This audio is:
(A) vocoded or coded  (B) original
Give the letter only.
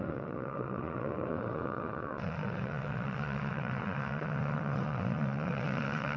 A